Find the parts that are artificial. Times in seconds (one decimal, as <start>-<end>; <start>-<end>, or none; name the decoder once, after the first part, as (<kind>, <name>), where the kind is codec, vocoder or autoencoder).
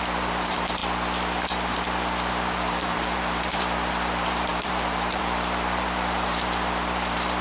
0.0-0.8 (vocoder, BigVGAN v2); 2.3-7.4